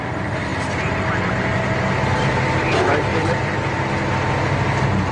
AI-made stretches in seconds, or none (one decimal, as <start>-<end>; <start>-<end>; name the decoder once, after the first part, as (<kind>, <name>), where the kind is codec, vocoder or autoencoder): 3.1-3.8 (vocoder, BigVGAN v2)